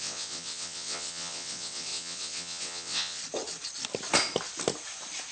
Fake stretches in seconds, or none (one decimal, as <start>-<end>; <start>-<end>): 0.0-3.2